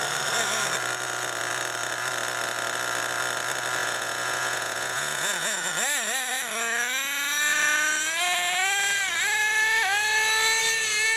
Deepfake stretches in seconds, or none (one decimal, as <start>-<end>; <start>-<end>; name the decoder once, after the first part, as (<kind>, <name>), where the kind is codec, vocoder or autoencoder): 3.8-5.7 (vocoder, Vocos)

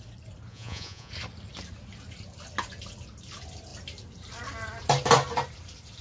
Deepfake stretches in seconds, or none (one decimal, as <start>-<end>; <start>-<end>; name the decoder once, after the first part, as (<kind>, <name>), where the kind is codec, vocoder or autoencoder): 0.5-1.1 (vocoder, Vocos)

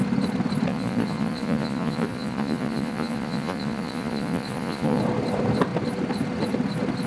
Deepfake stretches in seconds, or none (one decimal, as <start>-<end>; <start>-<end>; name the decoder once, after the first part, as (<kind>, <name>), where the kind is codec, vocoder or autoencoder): 0.7-5.0 (vocoder, Vocos)

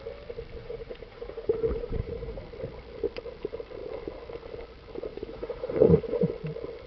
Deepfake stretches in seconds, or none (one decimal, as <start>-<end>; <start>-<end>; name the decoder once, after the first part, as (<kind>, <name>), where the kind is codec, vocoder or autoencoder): 0.6-2.4 (vocoder, Vocos); 5.1-6.3